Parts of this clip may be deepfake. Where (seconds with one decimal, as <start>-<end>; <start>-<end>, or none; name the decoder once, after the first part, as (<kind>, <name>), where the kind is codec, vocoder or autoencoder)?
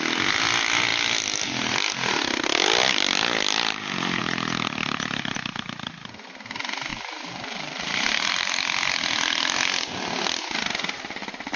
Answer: 6.9-8.6 (vocoder, BigVGAN v2)